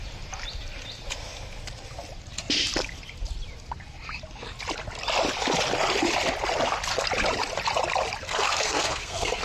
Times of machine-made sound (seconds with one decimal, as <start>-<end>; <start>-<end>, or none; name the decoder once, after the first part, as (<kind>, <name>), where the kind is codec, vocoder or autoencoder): 8.2-9.4 (codec, SNAC)